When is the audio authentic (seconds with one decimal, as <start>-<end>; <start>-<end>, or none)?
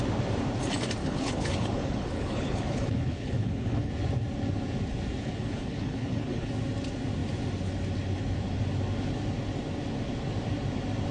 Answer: 0.0-1.0; 3.9-5.2; 6.5-11.1